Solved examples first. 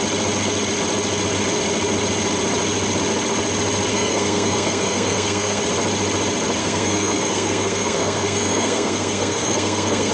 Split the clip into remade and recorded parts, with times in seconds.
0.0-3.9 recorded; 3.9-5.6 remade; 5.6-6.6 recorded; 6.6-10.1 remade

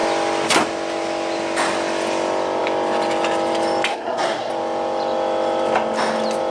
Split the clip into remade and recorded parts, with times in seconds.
0.0-3.9 recorded; 3.9-4.5 remade; 4.5-6.5 recorded

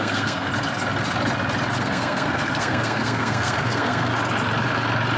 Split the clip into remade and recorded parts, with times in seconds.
0.0-0.5 remade; 0.5-1.8 recorded; 1.8-4.1 remade; 4.1-5.2 recorded

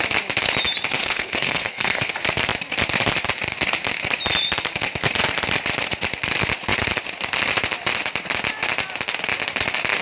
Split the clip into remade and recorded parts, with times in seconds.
0.0-1.0 recorded; 1.0-2.1 remade; 2.1-10.0 recorded

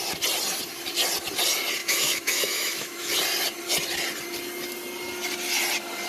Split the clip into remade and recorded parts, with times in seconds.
0.0-1.8 recorded; 1.8-3.1 remade; 3.1-6.1 recorded

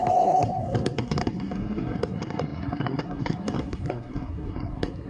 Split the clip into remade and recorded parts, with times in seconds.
0.0-5.1 remade

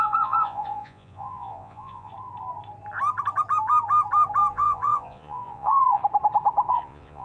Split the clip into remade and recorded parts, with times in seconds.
0.0-2.1 remade; 2.1-4.5 recorded; 4.5-6.0 remade; 6.0-6.7 recorded; 6.7-7.2 remade

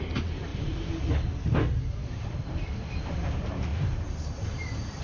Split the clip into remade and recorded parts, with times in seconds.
0.0-0.5 recorded; 0.5-1.0 remade; 1.0-2.0 recorded; 2.0-3.3 remade; 3.3-3.7 recorded; 3.7-4.5 remade; 4.5-5.0 recorded